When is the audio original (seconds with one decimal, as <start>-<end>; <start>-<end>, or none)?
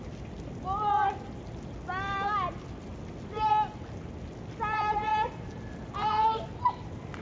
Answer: 0.0-7.2